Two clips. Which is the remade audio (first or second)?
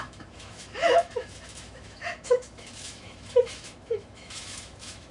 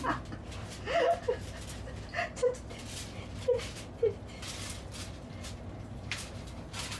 first